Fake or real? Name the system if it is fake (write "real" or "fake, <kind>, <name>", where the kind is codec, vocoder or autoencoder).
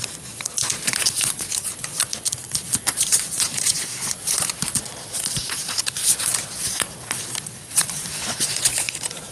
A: fake, vocoder, Vocos